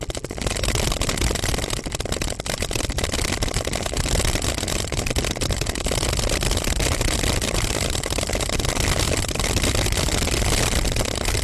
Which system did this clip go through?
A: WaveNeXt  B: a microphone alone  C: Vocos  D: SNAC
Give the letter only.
B